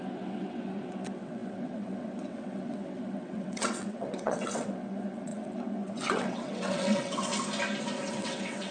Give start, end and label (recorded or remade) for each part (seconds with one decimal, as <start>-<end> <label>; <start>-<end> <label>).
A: 0.0-7.3 remade; 7.3-8.1 recorded; 8.1-8.7 remade